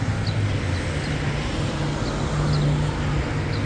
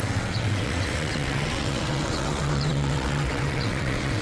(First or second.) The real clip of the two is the first